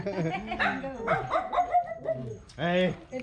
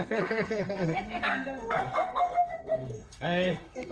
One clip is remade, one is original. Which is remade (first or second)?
second